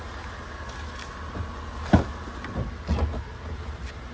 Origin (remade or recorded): recorded